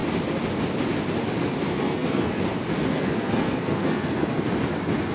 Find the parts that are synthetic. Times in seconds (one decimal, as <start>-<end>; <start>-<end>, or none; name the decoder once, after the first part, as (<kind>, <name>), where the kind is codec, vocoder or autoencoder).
1.7-2.4 (codec, SNAC); 2.9-4.4